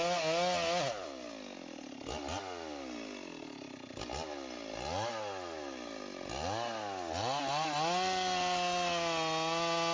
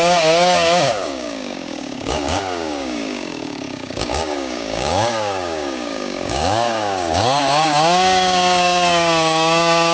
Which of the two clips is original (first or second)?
first